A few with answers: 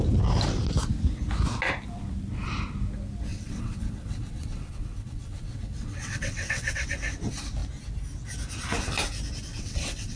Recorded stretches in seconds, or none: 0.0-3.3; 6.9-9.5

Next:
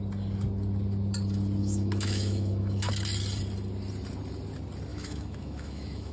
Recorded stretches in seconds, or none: 0.0-1.6; 2.9-4.9